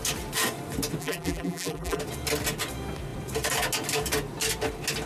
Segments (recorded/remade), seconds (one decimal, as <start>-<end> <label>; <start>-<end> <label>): 0.0-1.0 recorded; 1.0-2.0 remade; 2.0-5.1 recorded